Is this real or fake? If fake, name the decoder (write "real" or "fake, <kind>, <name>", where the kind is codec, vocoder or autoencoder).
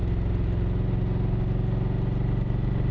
real